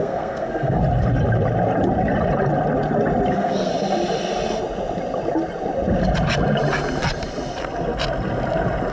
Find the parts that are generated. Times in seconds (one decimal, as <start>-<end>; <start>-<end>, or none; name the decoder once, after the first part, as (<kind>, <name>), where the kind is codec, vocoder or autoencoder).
0.0-0.8 (codec, SNAC); 3.3-3.7

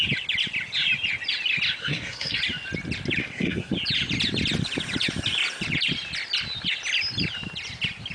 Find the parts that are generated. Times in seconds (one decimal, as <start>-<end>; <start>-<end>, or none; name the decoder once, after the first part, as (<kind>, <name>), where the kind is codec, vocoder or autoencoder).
1.8-2.4 (codec, SNAC); 3.2-3.7

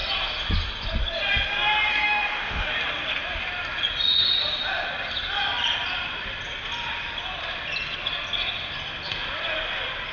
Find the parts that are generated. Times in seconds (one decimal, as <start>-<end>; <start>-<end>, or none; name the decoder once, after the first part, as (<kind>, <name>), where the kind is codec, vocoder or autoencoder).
1.9-2.7 (autoencoder, DAC-VAE)

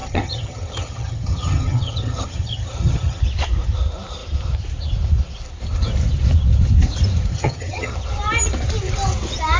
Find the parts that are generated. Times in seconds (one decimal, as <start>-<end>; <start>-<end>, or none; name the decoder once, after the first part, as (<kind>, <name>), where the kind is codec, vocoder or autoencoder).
0.0-3.2 (vocoder, HiFi-GAN); 7.3-7.9

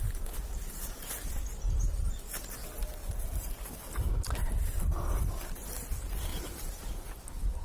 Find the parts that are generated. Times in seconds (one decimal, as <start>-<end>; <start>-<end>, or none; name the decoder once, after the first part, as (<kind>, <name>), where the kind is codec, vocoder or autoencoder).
6.3-6.8 (vocoder, BigVGAN v2)

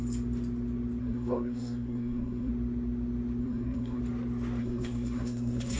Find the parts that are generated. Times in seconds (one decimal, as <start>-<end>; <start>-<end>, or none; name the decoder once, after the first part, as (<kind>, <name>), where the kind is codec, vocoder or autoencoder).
1.0-2.5 (codec, SNAC); 3.4-4.0; 4.6-5.8